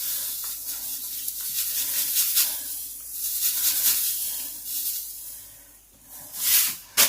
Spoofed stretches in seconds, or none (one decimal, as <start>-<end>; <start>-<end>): none